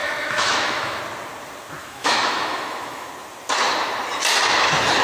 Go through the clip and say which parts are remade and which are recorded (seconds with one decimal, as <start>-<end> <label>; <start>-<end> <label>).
0.0-1.0 remade; 1.0-1.8 recorded; 1.8-3.1 remade; 3.1-5.0 recorded